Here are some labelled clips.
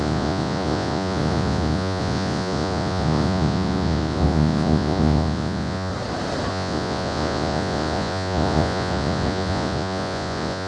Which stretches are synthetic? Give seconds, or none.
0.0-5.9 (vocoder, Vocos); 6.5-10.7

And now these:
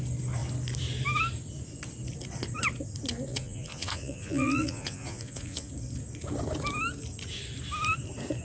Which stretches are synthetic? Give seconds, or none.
3.3-5.7 (vocoder, Vocos)

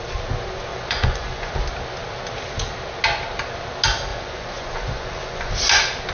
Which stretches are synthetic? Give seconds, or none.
0.7-1.5 (vocoder, Vocos); 4.1-5.5

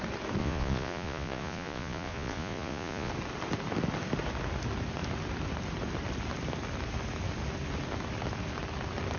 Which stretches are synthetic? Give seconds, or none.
0.4-3.1 (vocoder, Vocos)

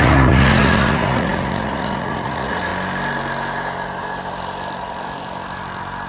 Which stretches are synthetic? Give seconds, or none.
0.0-2.7 (vocoder, Vocos)

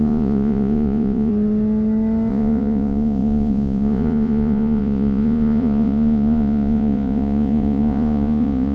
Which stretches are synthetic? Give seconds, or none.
0.0-1.3 (vocoder, Vocos); 2.3-8.7

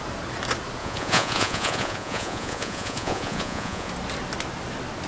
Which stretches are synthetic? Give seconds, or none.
0.8-3.9 (vocoder, Vocos)